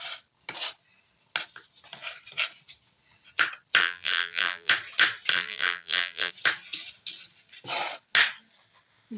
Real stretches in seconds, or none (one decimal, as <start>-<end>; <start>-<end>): 0.0-3.8; 4.7-5.3; 6.3-9.2

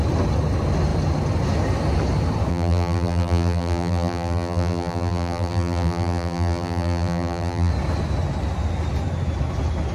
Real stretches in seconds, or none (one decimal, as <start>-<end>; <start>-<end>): 0.0-2.5; 7.7-9.9

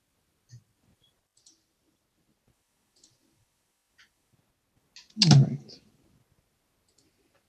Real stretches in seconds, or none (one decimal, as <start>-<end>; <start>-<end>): 0.0-7.5

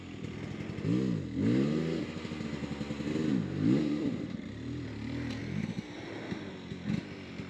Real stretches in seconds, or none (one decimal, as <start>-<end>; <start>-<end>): 0.0-3.3; 5.4-7.5

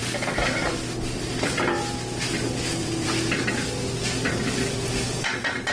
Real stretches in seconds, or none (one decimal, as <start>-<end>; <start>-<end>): 0.0-2.8; 4.9-5.7